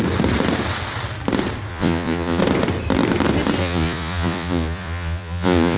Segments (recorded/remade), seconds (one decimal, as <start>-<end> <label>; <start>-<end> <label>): 0.0-1.7 recorded; 1.7-2.4 remade; 2.4-3.6 recorded; 3.6-5.8 remade

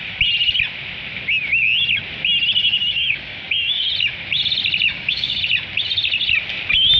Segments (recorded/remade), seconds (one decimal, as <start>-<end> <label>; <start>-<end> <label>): 0.0-2.6 recorded; 2.6-3.9 remade; 3.9-4.9 recorded; 4.9-5.4 remade; 5.4-7.0 recorded

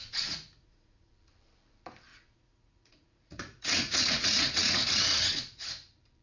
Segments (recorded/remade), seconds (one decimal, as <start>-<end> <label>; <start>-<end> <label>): 0.0-1.1 remade; 1.1-2.1 recorded; 2.1-5.7 remade; 5.7-6.2 recorded

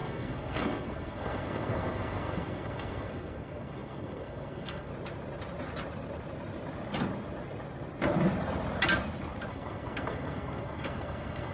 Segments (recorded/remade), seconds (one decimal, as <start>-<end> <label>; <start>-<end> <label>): 0.0-4.9 remade; 4.9-9.5 recorded; 9.5-11.5 remade

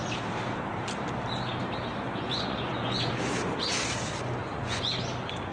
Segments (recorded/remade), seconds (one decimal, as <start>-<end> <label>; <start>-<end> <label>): 0.0-1.9 recorded; 1.9-3.1 remade; 3.1-4.4 recorded; 4.4-4.9 remade; 4.9-5.5 recorded

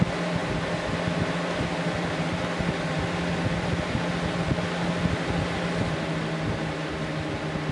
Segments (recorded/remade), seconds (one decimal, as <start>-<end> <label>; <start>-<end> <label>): 0.0-7.7 recorded

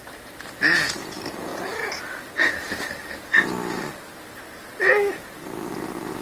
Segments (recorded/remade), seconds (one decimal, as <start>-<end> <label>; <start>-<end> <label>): 0.0-6.2 recorded

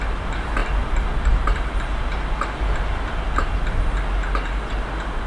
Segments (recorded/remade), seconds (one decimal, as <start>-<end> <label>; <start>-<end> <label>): 0.0-5.3 recorded